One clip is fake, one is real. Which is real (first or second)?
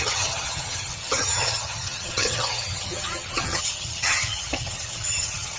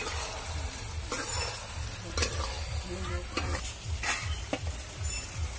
second